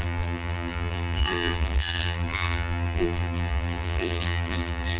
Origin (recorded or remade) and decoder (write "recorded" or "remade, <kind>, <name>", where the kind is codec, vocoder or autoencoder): remade, vocoder, BigVGAN v2